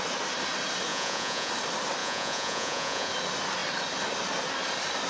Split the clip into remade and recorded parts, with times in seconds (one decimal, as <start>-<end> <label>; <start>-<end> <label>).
0.0-0.9 recorded; 0.9-1.5 remade; 1.5-2.0 recorded; 2.0-3.1 remade; 3.1-5.1 recorded